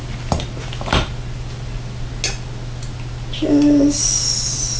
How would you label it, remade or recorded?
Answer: recorded